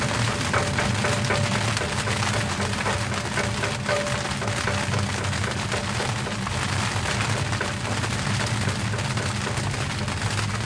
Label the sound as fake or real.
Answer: real